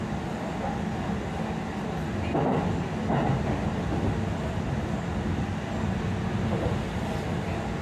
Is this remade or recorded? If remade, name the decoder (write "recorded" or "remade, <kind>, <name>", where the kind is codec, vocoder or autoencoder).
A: recorded